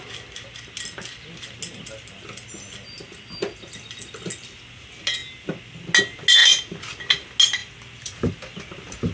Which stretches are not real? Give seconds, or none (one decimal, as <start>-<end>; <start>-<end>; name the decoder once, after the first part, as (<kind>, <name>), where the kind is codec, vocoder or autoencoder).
none